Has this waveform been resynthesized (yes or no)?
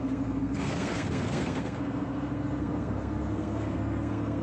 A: yes